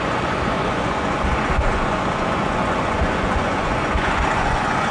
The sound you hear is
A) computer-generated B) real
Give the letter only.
A